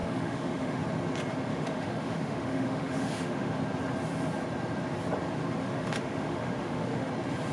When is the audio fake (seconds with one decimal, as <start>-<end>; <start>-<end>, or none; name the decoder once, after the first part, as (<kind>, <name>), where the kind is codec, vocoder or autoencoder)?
0.0-0.8 (autoencoder, DAC-VAE); 1.5-3.6; 5.6-7.1